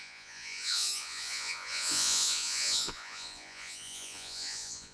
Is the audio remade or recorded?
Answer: remade